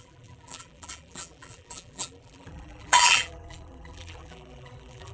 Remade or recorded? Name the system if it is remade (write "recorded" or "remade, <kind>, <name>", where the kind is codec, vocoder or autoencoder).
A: remade, vocoder, BigVGAN v2